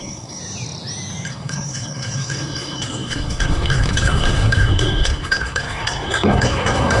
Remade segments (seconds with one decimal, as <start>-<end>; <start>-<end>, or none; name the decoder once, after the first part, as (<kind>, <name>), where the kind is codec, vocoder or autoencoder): 0.0-0.4 (codec, SNAC); 1.3-7.0